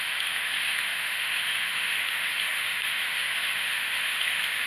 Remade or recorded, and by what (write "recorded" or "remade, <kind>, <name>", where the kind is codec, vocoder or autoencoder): remade, autoencoder, DAC-VAE